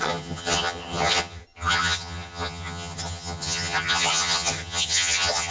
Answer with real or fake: fake